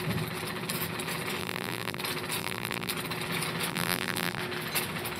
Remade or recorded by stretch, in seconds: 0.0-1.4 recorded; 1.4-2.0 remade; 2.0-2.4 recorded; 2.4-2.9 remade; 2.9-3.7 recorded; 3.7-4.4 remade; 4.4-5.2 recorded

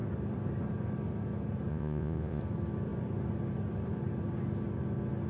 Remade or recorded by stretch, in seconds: 0.0-1.7 recorded; 1.7-2.4 remade; 2.4-5.3 recorded

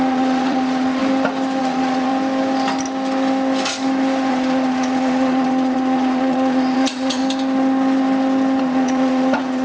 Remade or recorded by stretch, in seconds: 0.0-1.0 remade; 1.0-1.6 recorded; 1.6-2.1 remade; 2.1-4.3 recorded; 4.3-7.2 remade; 7.2-8.6 recorded; 8.6-9.6 remade

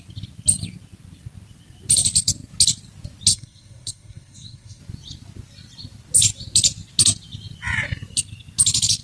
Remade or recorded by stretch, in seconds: 0.0-3.3 recorded; 3.3-4.8 remade; 4.8-9.0 recorded

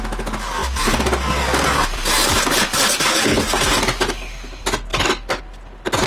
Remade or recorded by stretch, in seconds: 0.0-4.9 recorded; 4.9-5.4 remade; 5.4-6.1 recorded

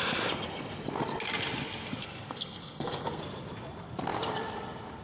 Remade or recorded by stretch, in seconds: 0.0-2.0 recorded; 2.0-3.2 remade; 3.2-5.0 recorded

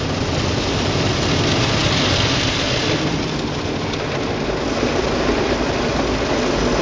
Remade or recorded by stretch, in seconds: 0.0-6.8 recorded

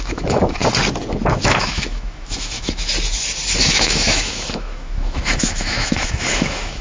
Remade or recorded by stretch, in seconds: 0.0-0.6 remade; 0.6-1.3 recorded; 1.3-2.9 remade; 2.9-3.6 recorded; 3.6-6.8 remade